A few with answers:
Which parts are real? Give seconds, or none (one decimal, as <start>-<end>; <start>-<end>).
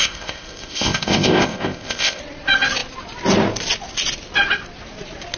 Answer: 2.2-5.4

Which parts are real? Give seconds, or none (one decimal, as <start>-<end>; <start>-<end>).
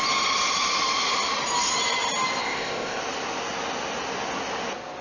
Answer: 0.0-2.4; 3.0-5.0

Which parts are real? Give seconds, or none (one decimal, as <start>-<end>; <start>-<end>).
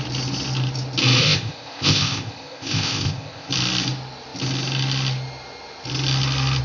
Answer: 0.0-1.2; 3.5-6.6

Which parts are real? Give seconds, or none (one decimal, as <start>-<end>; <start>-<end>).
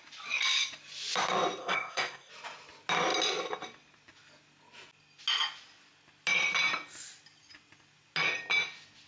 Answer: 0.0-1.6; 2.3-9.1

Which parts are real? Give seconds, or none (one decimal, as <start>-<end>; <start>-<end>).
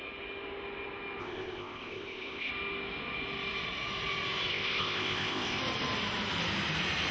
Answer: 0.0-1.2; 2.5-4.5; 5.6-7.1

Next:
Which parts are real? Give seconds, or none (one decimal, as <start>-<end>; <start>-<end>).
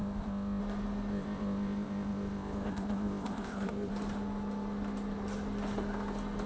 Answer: 0.6-1.1; 3.9-6.5